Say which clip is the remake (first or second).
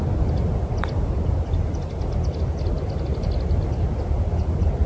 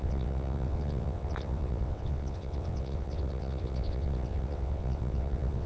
second